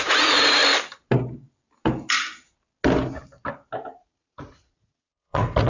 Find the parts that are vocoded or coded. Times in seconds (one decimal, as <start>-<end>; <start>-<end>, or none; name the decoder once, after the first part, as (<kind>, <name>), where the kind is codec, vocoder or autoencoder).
0.0-0.6 (vocoder, Vocos); 4.0-5.7